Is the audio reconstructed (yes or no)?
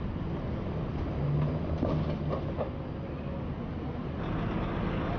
no